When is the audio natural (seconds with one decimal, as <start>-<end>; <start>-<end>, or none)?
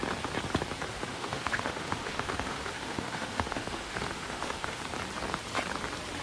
0.0-1.1; 4.8-6.2